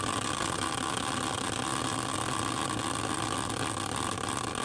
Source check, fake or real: real